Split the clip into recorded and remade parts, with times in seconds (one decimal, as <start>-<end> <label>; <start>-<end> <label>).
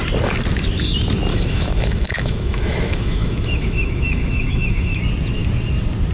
0.0-1.3 recorded; 1.3-5.0 remade; 5.0-6.1 recorded